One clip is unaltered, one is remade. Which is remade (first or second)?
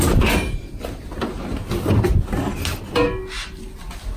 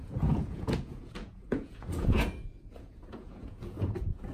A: second